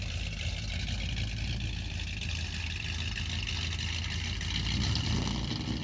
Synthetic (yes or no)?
no